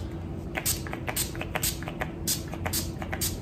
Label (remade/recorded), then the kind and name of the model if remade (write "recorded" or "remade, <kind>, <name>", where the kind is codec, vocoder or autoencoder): recorded